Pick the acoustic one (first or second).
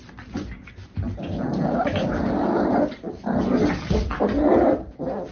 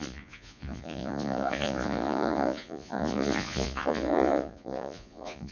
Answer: first